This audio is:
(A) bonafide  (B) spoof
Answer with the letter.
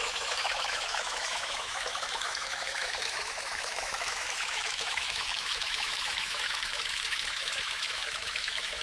B